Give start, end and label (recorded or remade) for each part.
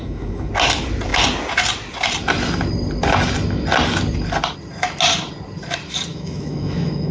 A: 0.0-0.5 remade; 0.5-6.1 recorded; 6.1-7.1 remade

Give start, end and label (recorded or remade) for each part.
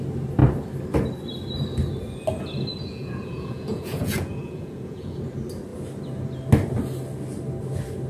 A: 0.0-2.7 recorded; 2.7-5.2 remade; 5.2-8.1 recorded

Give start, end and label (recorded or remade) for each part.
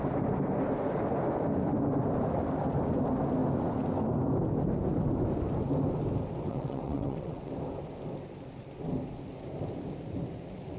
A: 0.0-6.5 recorded; 6.5-7.5 remade; 7.5-10.8 recorded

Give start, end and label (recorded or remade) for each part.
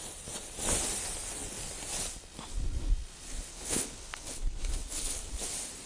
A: 0.0-3.5 recorded; 3.5-5.3 remade; 5.3-5.9 recorded